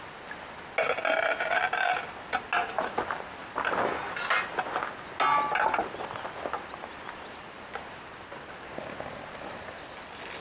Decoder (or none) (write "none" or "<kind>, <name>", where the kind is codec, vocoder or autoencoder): none